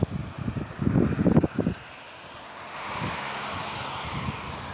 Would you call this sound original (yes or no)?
yes